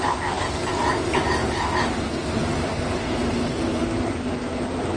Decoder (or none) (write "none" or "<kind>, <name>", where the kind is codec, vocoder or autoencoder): none